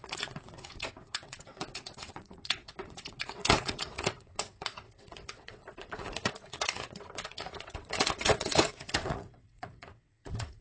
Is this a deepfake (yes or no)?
yes